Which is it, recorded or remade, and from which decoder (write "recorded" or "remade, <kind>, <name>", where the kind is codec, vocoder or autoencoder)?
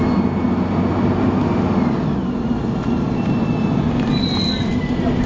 recorded